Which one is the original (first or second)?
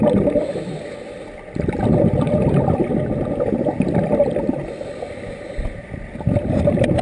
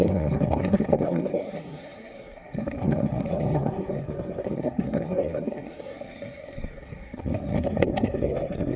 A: first